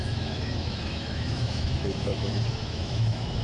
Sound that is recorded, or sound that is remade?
remade